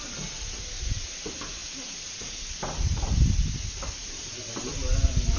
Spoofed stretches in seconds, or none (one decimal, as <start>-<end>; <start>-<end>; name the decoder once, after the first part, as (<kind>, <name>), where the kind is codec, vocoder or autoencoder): none